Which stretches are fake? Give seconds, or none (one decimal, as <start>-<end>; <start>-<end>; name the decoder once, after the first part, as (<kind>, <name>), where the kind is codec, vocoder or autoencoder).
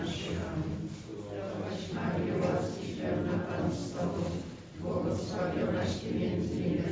none